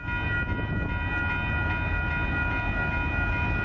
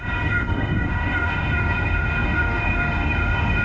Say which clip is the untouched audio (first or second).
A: first